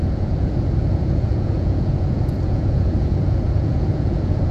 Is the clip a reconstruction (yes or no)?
yes